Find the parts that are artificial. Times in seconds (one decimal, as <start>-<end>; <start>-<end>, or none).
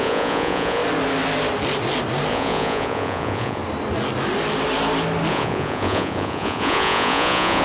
0.0-0.8; 2.3-3.6; 5.3-7.6